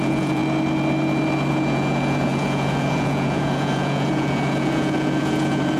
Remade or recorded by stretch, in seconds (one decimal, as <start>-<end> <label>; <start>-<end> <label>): 0.0-0.4 remade; 0.4-1.5 recorded; 1.5-5.8 remade